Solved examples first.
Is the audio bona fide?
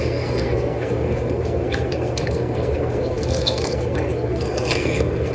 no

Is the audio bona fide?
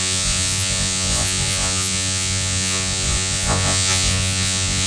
no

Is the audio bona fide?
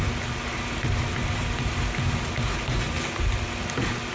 yes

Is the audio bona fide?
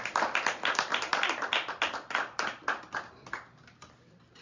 no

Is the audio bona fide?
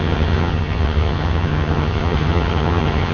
no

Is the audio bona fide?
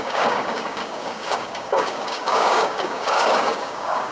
no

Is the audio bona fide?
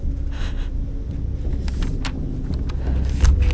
yes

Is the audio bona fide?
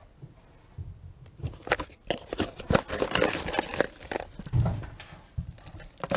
yes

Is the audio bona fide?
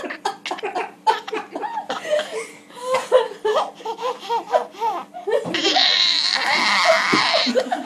yes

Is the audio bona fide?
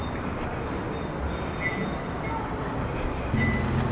yes